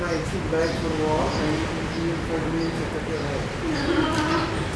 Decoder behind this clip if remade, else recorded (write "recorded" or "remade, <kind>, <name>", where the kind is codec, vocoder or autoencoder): recorded